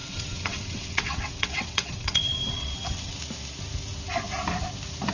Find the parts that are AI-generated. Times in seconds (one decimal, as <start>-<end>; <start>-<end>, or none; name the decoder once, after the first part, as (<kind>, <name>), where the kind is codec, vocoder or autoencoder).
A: 0.0-3.1 (vocoder, WaveNeXt)